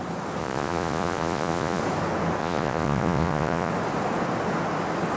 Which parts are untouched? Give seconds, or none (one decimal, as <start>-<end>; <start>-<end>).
0.0-0.4; 1.8-2.4; 3.7-5.2